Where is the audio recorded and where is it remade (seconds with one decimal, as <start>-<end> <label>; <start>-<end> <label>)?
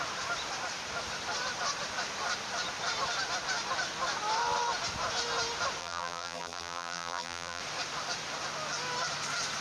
0.0-5.8 recorded; 5.8-7.6 remade; 7.6-9.6 recorded